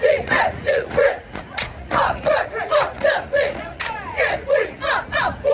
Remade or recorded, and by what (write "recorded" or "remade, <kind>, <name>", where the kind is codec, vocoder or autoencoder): remade, vocoder, Vocos